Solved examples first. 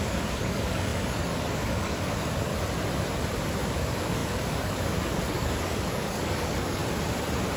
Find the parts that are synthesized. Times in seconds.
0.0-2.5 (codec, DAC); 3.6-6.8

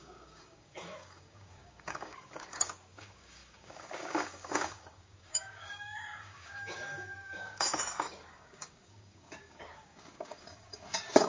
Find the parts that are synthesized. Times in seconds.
0.0-11.3 (codec, DAC)

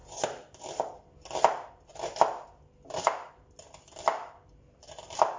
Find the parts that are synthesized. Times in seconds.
none

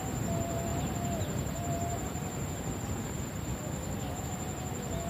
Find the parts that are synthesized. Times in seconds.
3.5-4.3 (codec, DAC)